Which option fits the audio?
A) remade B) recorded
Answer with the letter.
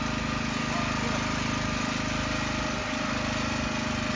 B